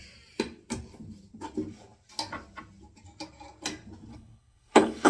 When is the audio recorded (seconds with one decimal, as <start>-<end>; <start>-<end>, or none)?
0.0-4.1